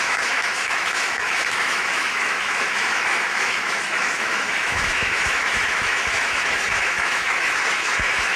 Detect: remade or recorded remade